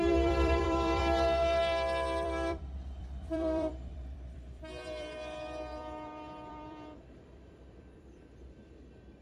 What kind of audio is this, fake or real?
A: fake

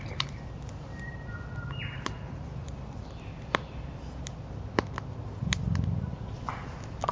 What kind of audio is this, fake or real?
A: real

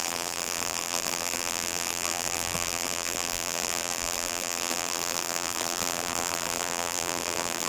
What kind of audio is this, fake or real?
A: fake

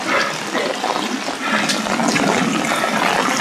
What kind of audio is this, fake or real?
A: real